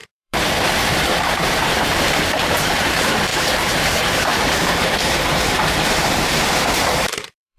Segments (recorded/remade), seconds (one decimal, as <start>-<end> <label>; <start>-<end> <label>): 0.0-7.6 remade